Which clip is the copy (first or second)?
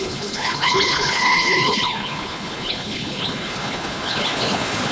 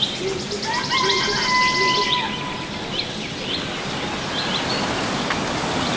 first